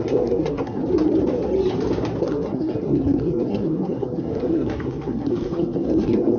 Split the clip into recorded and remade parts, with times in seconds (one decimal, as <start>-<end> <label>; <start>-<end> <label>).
0.0-0.8 remade; 0.8-2.2 recorded; 2.2-6.4 remade